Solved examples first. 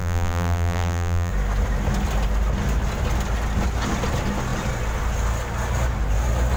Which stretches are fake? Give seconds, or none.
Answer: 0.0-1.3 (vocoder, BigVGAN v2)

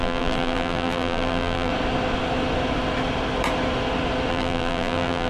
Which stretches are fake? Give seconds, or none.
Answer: 0.0-1.7 (vocoder, BigVGAN v2); 4.3-5.3

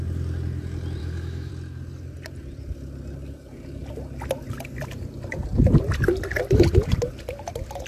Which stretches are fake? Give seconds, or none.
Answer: 1.0-1.5 (autoencoder, DAC-VAE)

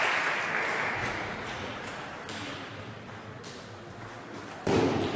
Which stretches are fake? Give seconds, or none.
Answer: 1.0-2.0 (vocoder, Vocos)